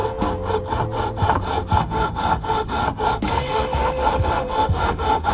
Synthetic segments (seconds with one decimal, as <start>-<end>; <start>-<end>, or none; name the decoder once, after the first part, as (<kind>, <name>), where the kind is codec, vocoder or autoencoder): 1.8-2.8 (autoencoder, DAC-VAE); 3.3-5.3